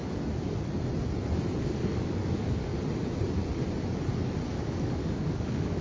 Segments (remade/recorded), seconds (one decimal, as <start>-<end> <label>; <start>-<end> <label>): 0.0-1.6 recorded; 1.6-2.7 remade; 2.7-4.7 recorded; 4.7-5.8 remade